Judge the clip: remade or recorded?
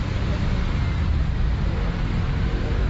recorded